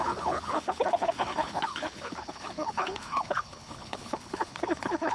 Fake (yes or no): yes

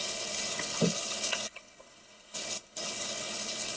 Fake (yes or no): yes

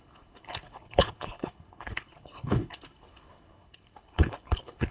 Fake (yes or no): yes